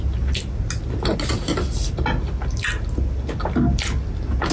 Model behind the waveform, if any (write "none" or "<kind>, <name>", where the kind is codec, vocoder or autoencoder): none